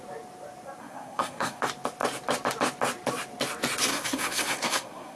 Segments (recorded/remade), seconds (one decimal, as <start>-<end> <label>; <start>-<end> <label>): 0.0-0.8 recorded; 0.8-1.6 remade; 1.6-3.9 recorded; 3.9-5.2 remade